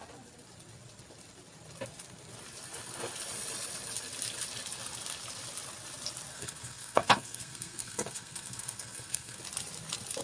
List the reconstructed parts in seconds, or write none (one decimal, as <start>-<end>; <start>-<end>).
6.3-9.4